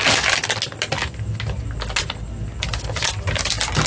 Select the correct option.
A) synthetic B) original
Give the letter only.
B